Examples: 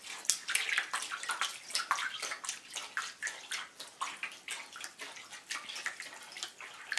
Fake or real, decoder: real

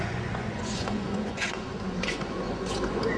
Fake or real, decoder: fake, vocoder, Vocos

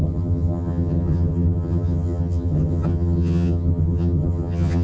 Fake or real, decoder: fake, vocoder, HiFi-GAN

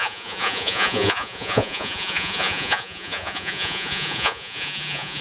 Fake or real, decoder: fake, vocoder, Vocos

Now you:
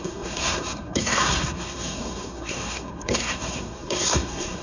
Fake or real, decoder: fake, codec, SNAC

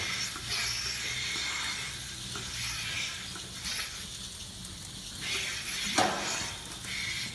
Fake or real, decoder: real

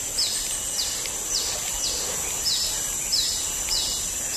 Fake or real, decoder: real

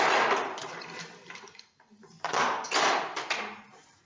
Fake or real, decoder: fake, vocoder, BigVGAN v2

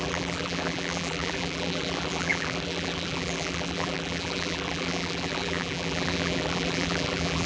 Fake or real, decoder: fake, vocoder, BigVGAN v2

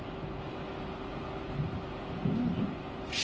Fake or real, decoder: real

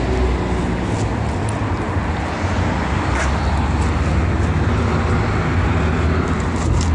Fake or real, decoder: real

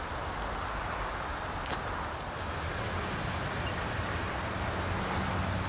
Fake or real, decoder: real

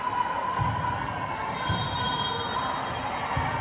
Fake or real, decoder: real